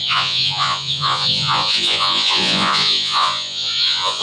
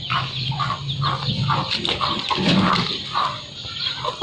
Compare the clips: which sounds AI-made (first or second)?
first